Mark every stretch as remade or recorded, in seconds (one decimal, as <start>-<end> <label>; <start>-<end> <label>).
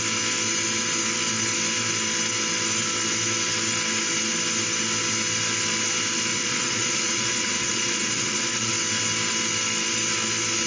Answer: 0.0-6.3 recorded; 6.3-8.7 remade; 8.7-10.7 recorded